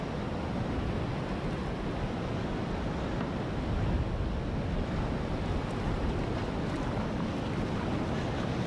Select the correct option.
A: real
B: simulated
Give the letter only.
A